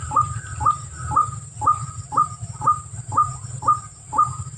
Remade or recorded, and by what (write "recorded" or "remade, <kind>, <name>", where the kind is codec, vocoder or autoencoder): recorded